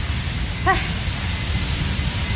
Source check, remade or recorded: recorded